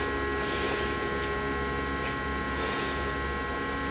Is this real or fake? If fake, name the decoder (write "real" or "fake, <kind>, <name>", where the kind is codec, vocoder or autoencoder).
real